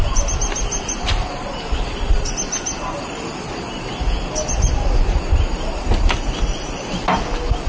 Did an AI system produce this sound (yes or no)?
no